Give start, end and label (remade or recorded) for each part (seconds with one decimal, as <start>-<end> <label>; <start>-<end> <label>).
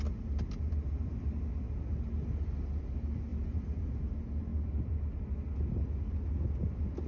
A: 0.0-7.1 recorded